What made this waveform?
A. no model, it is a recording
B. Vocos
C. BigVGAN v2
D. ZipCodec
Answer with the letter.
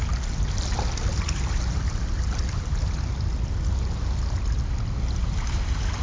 A